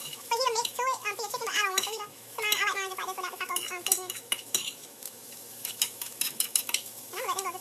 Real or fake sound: fake